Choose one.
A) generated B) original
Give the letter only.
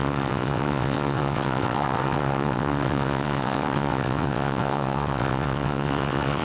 A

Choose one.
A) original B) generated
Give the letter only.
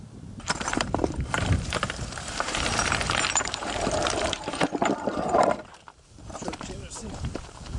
B